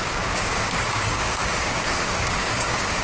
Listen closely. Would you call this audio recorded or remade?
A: remade